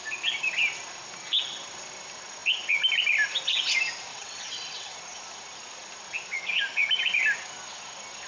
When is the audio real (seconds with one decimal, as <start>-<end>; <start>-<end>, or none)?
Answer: 0.0-4.1; 4.9-8.3